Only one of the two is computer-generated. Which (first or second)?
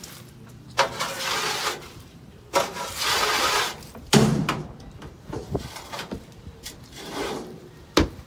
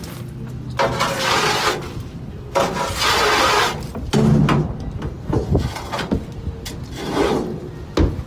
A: first